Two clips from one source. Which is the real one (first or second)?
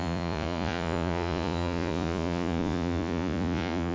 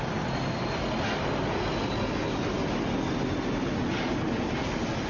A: second